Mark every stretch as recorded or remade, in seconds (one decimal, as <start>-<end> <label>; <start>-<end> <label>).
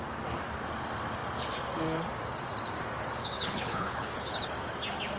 0.0-3.2 recorded; 3.2-4.4 remade; 4.4-5.2 recorded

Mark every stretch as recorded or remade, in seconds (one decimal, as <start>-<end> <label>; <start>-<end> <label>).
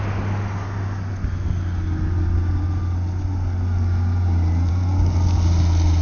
0.0-6.0 recorded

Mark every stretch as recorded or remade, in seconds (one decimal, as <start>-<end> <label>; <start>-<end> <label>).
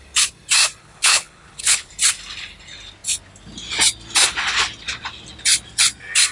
0.0-0.8 recorded; 0.8-1.9 remade; 1.9-6.3 recorded